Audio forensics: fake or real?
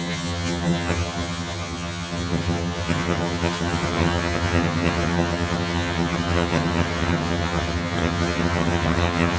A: fake